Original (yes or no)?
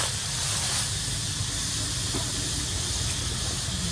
yes